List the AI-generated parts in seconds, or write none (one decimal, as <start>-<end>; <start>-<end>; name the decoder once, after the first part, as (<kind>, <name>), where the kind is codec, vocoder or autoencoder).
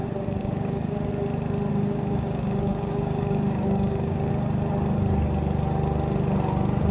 0.0-1.1 (codec, DAC); 1.7-4.3